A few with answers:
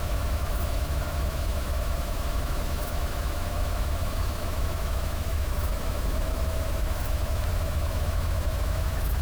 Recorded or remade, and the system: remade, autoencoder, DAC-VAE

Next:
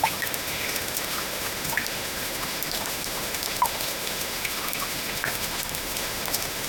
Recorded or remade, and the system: remade, autoencoder, DAC-VAE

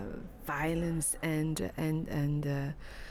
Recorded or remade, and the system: recorded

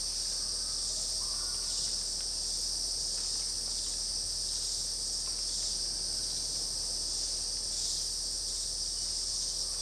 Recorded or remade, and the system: recorded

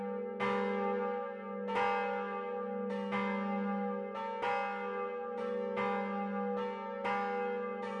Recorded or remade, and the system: recorded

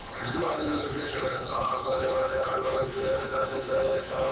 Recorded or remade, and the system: remade, codec, HILCodec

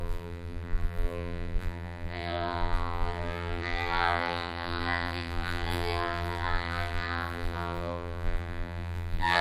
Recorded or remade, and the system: remade, vocoder, BigVGAN v2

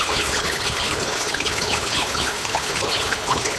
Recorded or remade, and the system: remade, codec, HILCodec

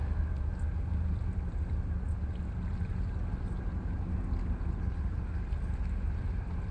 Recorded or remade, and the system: recorded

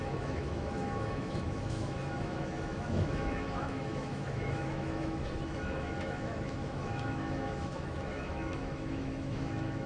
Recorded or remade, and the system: remade, autoencoder, DAC-VAE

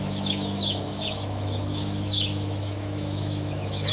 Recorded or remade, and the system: remade, autoencoder, DAC-VAE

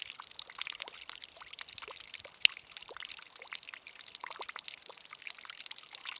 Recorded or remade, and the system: recorded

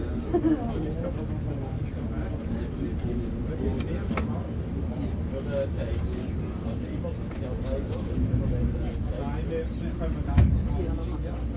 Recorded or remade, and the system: recorded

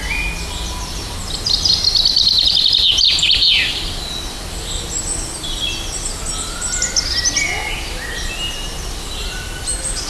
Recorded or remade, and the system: recorded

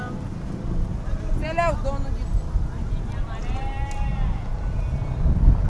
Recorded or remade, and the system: recorded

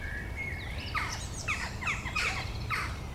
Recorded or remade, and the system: remade, vocoder, BigVGAN v2